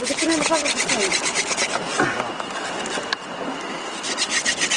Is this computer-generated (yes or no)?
no